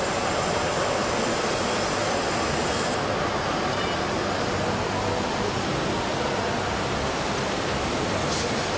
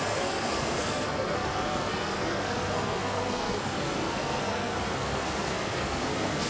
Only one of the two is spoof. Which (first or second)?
second